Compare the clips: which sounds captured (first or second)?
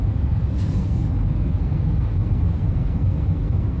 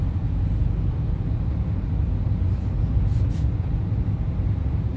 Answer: second